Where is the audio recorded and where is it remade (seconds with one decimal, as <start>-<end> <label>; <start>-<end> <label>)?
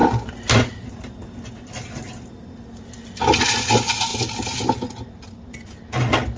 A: 0.0-6.4 recorded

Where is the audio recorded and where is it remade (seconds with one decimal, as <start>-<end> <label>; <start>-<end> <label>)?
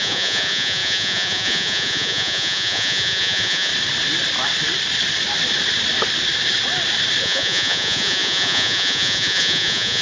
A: 0.0-3.7 remade; 3.7-7.2 recorded; 7.2-10.0 remade